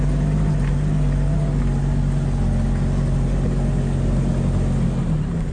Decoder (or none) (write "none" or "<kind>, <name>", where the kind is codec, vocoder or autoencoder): none